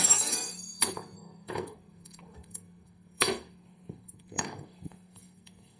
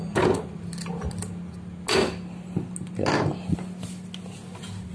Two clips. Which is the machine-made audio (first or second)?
first